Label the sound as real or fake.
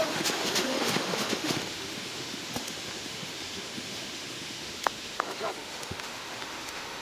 fake